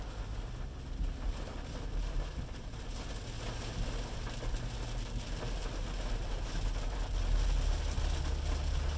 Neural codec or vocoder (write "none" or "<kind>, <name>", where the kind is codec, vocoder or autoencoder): none